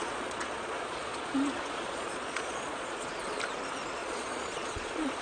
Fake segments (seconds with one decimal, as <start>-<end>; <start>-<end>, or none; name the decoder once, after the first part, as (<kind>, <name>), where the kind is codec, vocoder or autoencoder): 0.0-3.1 (vocoder, Vocos); 4.0-5.2